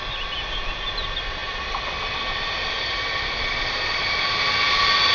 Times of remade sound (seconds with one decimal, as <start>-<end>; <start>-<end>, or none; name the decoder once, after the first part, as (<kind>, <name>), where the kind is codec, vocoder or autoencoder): 1.4-4.3 (vocoder, BigVGAN v2)